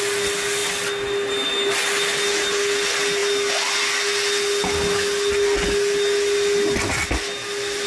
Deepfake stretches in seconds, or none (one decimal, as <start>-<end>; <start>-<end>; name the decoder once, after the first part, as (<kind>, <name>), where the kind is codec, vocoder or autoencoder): none